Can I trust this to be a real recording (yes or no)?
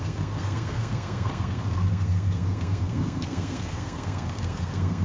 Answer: no